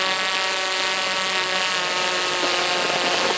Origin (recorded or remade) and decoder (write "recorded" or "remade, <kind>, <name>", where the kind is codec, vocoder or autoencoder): recorded